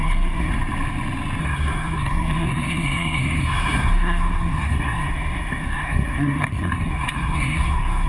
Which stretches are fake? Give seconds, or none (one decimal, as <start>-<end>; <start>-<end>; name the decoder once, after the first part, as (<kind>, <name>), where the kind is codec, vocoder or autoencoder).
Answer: 0.0-0.5 (codec, SNAC); 1.4-8.1